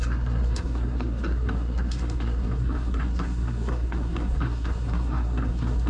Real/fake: fake